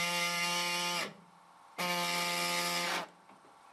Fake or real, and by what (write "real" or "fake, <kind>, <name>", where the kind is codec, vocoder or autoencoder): real